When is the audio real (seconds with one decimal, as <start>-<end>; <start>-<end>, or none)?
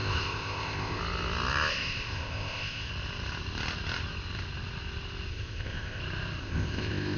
1.0-1.7; 2.9-5.3; 6.0-6.4